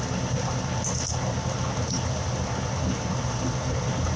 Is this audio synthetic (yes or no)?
no